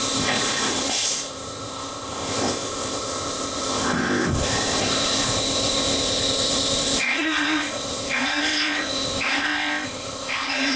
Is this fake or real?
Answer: fake